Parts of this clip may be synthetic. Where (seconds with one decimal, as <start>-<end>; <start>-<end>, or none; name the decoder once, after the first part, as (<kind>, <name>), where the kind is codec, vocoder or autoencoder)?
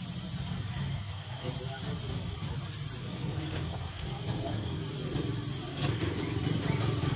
0.9-1.5 (codec, SNAC); 3.0-4.8; 5.7-6.2